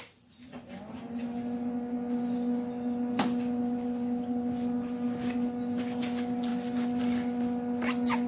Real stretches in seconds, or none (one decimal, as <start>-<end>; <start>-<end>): 0.0-8.3